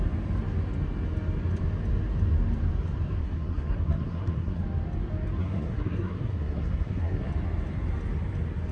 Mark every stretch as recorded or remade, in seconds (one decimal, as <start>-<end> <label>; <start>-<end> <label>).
0.0-3.2 recorded; 3.2-4.6 remade; 4.6-5.4 recorded; 5.4-7.3 remade; 7.3-8.7 recorded